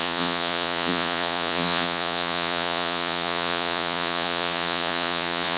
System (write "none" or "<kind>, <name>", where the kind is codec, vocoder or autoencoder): vocoder, Vocos